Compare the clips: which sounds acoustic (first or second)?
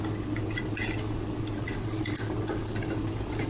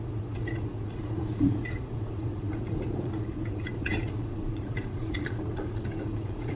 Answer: first